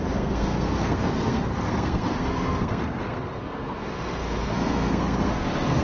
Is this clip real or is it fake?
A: fake